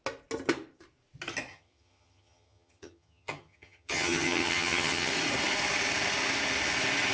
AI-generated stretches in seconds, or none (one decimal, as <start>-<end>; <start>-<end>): 1.5-5.1